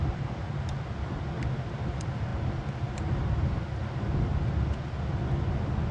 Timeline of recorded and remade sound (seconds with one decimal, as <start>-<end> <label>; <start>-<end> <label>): 0.0-0.8 remade; 0.8-5.9 recorded